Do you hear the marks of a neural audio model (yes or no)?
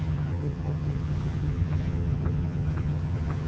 yes